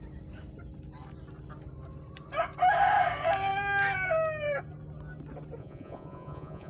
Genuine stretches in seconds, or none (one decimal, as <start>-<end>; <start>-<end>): 0.0-5.6